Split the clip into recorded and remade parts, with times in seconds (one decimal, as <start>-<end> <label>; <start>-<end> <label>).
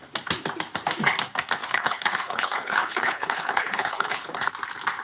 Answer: 0.0-1.6 recorded; 1.6-4.3 remade; 4.3-5.0 recorded